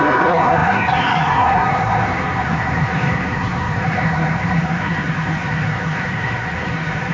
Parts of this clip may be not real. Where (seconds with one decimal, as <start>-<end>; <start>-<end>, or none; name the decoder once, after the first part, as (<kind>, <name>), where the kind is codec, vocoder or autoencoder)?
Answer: 0.0-7.1 (codec, SNAC)